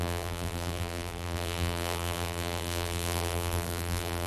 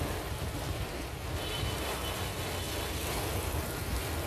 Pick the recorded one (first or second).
second